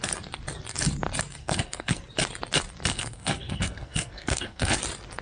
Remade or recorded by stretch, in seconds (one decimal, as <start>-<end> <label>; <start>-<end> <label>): 0.0-1.4 recorded; 1.4-2.0 remade; 2.0-2.9 recorded; 2.9-4.8 remade; 4.8-5.2 recorded